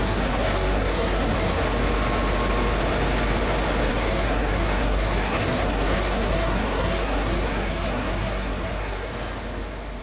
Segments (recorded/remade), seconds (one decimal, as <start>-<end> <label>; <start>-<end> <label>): 0.0-1.6 remade; 1.6-3.9 recorded; 3.9-9.1 remade; 9.1-10.0 recorded